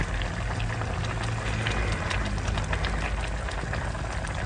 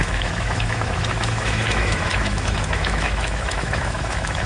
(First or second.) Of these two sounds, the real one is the first